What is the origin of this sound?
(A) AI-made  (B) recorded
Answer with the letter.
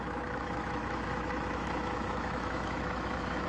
A